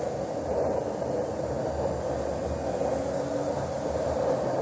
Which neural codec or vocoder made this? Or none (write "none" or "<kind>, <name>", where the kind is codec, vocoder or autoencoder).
none